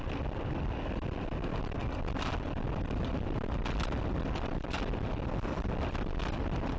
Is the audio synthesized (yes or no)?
no